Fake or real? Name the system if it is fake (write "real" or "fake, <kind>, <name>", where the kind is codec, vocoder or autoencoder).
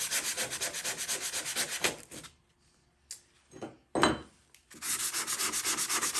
real